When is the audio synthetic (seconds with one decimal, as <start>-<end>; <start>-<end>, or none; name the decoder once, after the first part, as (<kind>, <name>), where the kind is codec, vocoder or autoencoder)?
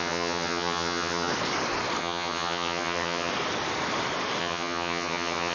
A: 0.0-1.3 (vocoder, HiFi-GAN); 2.0-3.3; 4.4-5.5